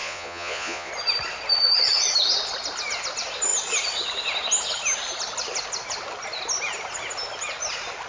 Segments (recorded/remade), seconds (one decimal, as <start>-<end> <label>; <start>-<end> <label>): 0.0-0.9 remade; 0.9-8.1 recorded

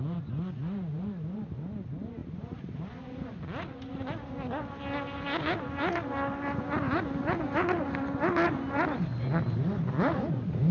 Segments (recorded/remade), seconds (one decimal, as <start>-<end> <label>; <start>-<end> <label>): 0.0-2.2 recorded; 2.2-2.9 remade; 2.9-9.1 recorded; 9.1-10.7 remade

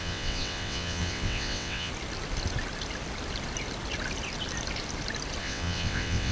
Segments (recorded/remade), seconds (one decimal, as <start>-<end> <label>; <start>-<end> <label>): 0.0-1.9 remade; 1.9-5.4 recorded; 5.4-6.3 remade

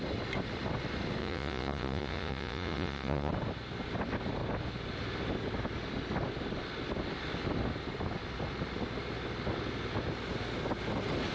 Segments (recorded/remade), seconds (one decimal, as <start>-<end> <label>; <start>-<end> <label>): 0.0-1.2 recorded; 1.2-3.3 remade; 3.3-11.3 recorded

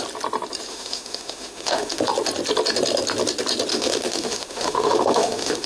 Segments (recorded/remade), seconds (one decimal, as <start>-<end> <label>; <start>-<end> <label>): 0.0-0.7 recorded; 0.7-2.0 remade; 2.0-3.7 recorded; 3.7-5.7 remade

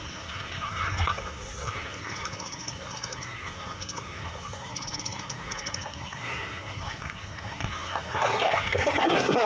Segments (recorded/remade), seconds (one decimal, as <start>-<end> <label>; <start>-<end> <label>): 0.0-9.5 remade

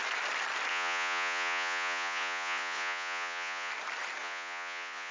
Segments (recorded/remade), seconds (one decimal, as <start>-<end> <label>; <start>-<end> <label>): 0.0-0.7 recorded; 0.7-3.7 remade; 3.7-4.2 recorded; 4.2-5.1 remade